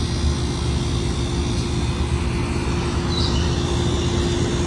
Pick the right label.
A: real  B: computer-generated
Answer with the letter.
A